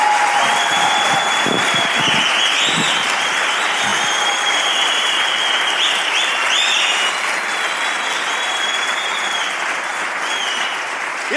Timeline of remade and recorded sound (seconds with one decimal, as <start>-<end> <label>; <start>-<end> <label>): 0.0-9.9 remade; 9.9-10.4 recorded; 10.4-11.4 remade